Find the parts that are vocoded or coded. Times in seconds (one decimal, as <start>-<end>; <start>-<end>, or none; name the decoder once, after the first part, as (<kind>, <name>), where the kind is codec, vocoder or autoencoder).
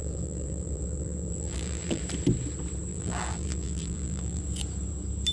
0.0-2.0 (vocoder, BigVGAN v2); 2.9-4.4